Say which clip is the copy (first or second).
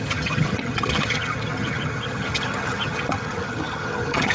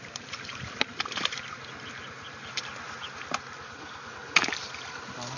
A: first